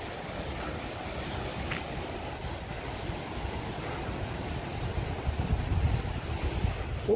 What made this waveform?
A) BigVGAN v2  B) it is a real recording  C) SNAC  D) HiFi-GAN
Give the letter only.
B